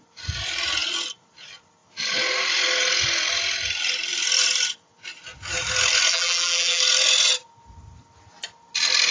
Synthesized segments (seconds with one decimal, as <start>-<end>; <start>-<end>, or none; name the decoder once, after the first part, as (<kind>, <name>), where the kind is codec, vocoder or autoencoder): 6.1-6.8 (vocoder, BigVGAN v2)